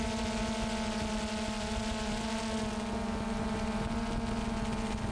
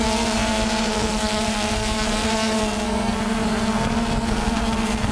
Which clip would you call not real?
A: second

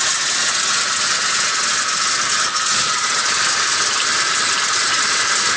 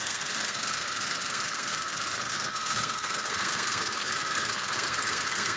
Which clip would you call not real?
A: second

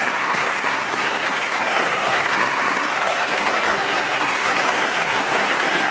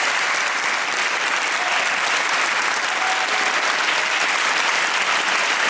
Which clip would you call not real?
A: first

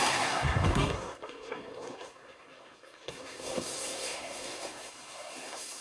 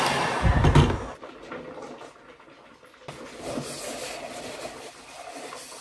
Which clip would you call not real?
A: first